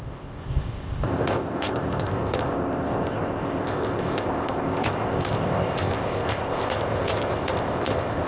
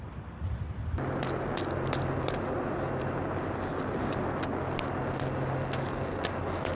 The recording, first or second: second